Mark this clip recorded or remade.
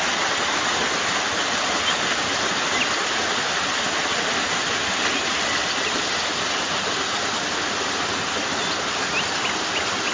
recorded